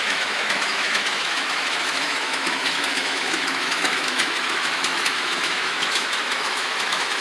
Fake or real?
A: fake